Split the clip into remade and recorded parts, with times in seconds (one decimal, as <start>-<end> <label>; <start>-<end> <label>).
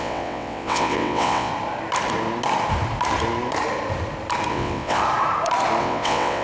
0.0-1.5 remade; 1.5-4.5 recorded; 4.5-5.0 remade; 5.0-5.8 recorded; 5.8-6.4 remade